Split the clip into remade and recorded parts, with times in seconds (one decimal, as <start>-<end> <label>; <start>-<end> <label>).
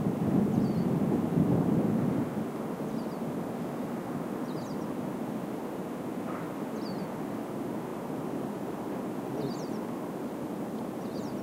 0.0-7.9 recorded; 7.9-11.4 remade